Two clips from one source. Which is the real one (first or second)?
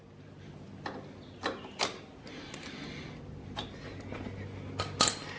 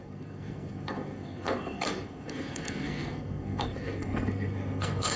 first